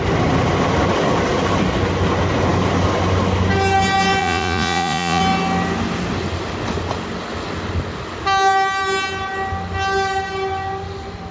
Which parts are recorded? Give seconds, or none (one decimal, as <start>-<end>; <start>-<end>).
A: 0.0-4.2; 5.2-11.3